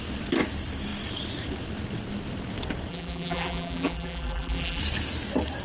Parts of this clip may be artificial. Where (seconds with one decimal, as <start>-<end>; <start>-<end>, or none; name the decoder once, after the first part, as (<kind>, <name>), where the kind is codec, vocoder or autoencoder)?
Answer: 2.9-4.8 (vocoder, BigVGAN v2)